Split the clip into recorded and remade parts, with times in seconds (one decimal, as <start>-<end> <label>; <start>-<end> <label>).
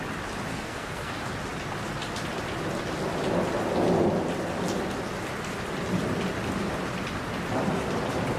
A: 0.0-0.5 recorded; 0.5-1.1 remade; 1.1-8.4 recorded